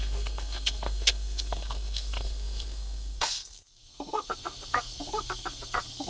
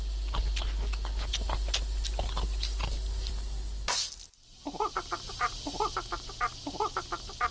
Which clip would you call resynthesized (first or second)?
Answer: first